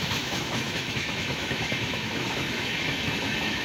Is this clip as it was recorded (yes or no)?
no